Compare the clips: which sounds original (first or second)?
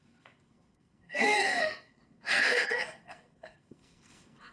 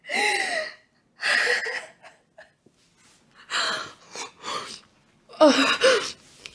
second